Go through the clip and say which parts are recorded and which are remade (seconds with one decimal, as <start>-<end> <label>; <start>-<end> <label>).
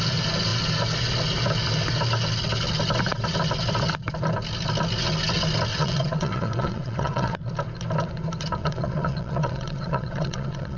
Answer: 0.0-5.7 recorded; 5.7-7.4 remade; 7.4-8.6 recorded; 8.6-10.8 remade